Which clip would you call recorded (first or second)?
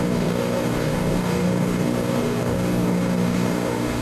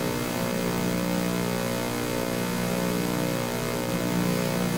second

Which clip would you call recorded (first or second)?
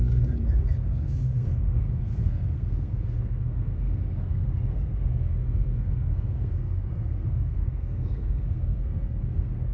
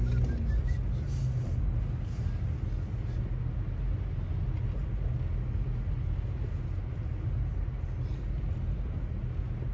second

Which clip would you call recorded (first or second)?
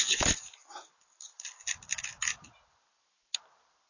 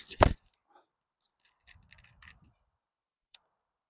first